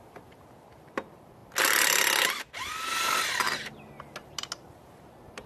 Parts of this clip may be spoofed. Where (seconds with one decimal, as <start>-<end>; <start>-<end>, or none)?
none